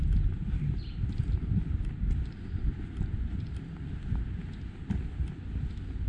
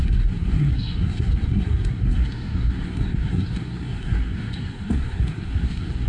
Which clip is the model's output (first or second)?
second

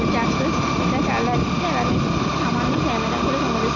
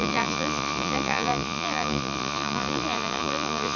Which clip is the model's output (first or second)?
second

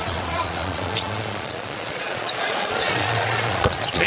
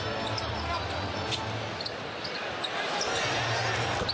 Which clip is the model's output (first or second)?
first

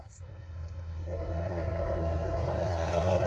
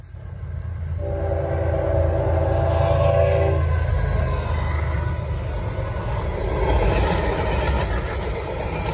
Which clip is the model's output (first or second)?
first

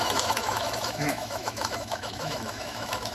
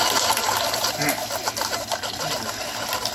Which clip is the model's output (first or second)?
first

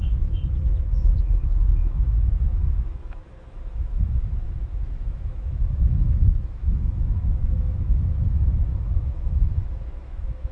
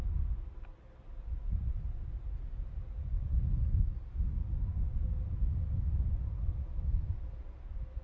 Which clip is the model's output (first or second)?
first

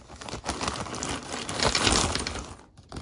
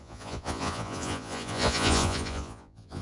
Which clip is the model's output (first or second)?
second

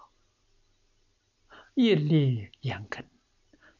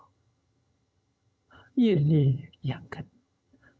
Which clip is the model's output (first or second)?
second